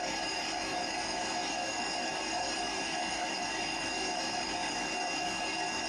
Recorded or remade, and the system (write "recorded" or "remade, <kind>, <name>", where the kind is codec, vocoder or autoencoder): remade, codec, DAC